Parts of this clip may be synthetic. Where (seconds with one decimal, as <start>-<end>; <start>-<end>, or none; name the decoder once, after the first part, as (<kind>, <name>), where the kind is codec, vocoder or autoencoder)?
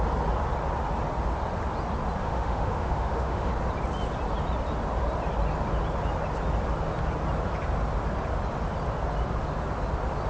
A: 2.2-3.5 (autoencoder, DAC-VAE)